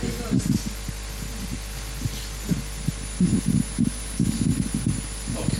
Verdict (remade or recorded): recorded